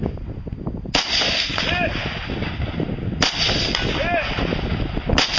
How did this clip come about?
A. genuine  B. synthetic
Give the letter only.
A